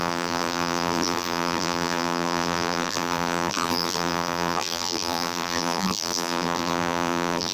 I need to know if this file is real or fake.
fake